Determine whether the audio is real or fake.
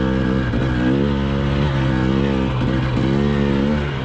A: real